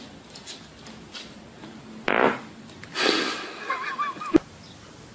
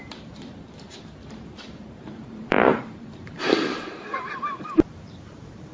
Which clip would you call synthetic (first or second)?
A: second